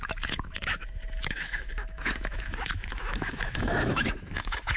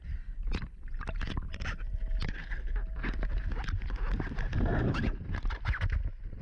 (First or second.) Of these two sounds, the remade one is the first